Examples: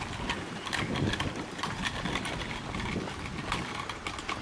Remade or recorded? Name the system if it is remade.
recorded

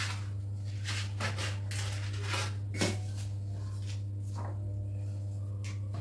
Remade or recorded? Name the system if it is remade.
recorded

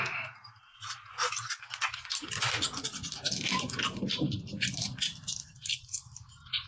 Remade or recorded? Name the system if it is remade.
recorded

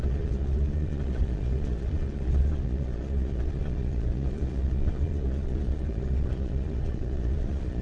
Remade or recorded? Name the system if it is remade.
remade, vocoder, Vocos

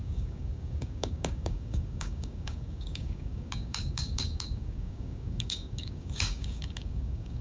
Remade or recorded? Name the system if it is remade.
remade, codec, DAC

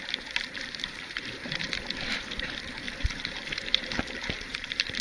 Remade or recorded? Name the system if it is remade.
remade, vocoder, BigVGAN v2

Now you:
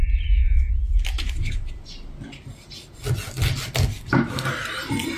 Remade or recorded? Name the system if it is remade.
recorded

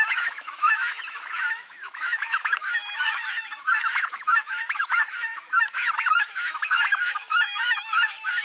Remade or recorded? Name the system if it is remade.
remade, autoencoder, DAC-VAE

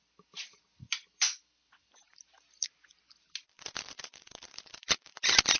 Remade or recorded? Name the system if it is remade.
recorded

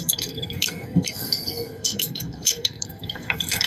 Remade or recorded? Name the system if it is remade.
remade, codec, SNAC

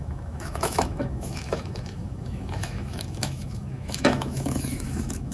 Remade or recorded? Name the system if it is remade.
remade, autoencoder, DAC-VAE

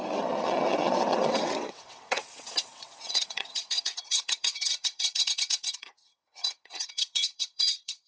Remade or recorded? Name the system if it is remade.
remade, vocoder, WaveNeXt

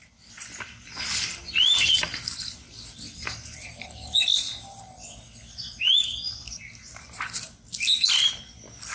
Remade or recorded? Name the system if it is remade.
recorded